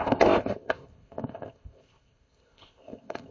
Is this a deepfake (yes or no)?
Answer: yes